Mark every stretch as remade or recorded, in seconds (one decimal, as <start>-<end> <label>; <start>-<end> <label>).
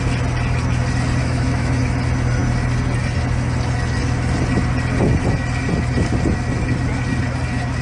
0.0-1.2 recorded; 1.2-1.8 remade; 1.8-7.8 recorded